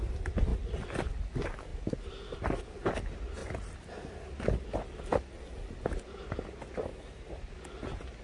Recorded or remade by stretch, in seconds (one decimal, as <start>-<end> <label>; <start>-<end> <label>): 0.0-3.4 recorded; 3.4-4.3 remade; 4.3-6.9 recorded; 6.9-7.5 remade; 7.5-8.2 recorded